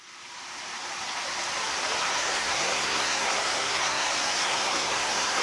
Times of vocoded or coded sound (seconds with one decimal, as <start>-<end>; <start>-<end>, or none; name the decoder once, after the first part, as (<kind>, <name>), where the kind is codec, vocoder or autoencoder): 2.1-5.4 (codec, SNAC)